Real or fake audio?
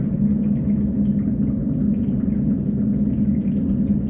real